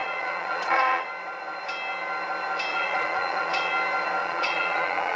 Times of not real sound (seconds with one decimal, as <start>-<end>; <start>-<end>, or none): 0.0-1.1; 2.7-3.7; 4.2-5.2